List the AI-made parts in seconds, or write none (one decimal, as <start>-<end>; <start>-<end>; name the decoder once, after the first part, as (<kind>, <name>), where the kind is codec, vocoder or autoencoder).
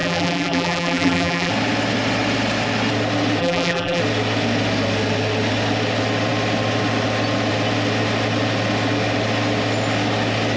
0.0-1.5 (vocoder, BigVGAN v2); 3.4-4.0